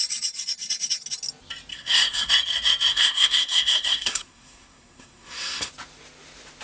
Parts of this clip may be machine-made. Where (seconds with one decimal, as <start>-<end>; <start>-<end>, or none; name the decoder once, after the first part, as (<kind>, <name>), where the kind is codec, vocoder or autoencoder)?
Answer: 1.7-2.3 (codec, SNAC); 2.9-5.7

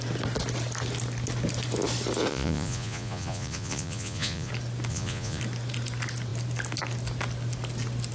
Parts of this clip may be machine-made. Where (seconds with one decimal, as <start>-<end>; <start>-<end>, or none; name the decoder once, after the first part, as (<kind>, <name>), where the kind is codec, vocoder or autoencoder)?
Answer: 2.3-4.5 (vocoder, Vocos); 4.9-5.4

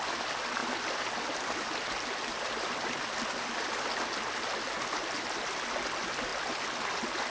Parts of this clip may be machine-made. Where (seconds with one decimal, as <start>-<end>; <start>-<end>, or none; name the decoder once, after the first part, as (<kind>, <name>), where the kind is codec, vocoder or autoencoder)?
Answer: none

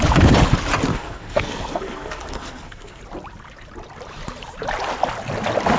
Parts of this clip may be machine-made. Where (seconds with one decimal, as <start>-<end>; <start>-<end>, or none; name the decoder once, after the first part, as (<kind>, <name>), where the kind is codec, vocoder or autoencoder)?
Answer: 0.9-3.0 (codec, SNAC)

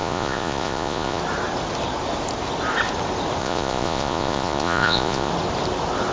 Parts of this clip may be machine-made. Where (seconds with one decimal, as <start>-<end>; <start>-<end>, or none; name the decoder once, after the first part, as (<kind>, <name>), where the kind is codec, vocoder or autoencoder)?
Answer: 0.0-1.2 (vocoder, Vocos); 3.4-5.3

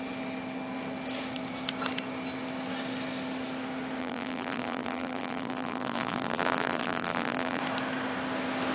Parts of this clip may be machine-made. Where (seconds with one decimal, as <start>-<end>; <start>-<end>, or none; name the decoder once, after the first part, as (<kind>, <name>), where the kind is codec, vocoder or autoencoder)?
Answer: 4.0-7.6 (vocoder, BigVGAN v2)

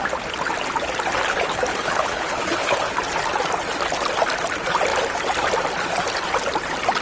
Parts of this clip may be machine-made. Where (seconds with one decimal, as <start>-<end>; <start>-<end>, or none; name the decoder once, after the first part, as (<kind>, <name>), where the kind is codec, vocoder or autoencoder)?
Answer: 1.7-2.9 (codec, HILCodec)